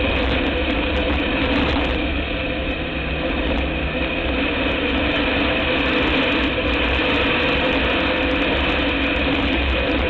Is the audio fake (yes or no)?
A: no